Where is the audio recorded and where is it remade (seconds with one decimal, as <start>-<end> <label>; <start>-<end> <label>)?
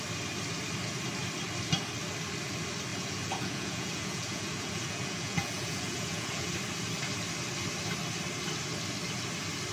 0.0-2.9 recorded; 2.9-6.5 remade; 6.5-9.7 recorded